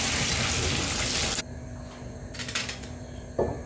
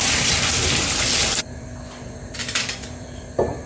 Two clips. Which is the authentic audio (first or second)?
first